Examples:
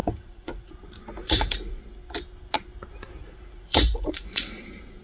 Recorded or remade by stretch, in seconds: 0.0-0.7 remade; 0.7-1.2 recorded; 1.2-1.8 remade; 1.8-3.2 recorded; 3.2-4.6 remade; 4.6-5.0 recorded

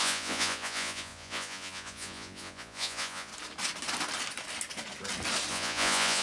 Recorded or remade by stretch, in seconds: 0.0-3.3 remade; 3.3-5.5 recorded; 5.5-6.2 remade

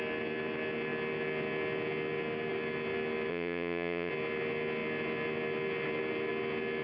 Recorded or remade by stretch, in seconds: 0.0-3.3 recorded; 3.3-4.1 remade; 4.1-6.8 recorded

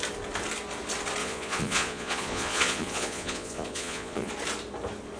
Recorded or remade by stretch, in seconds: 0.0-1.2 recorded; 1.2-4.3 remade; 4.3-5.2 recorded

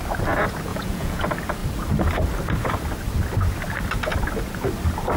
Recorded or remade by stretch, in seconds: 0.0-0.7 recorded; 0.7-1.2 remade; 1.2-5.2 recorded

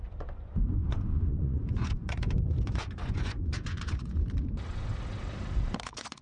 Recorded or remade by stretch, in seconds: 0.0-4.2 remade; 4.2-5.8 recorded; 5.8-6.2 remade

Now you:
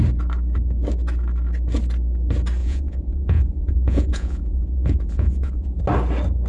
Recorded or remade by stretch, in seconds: 0.0-2.6 recorded; 2.6-5.8 remade; 5.8-6.5 recorded